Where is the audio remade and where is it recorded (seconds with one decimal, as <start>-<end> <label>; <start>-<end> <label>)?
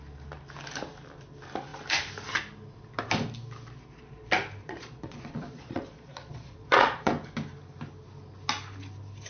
0.0-4.6 recorded; 4.6-7.1 remade; 7.1-9.3 recorded